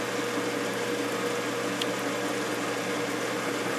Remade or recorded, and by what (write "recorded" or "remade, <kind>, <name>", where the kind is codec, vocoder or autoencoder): recorded